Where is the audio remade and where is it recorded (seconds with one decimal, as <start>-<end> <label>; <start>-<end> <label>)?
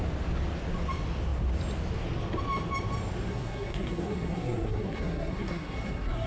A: 0.0-3.3 recorded; 3.3-6.3 remade